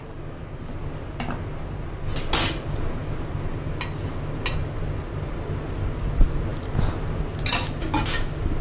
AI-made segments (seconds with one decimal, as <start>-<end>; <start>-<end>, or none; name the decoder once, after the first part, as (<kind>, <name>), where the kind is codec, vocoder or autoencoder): none